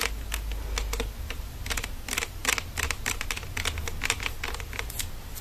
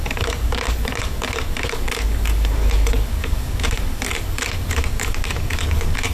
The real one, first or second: first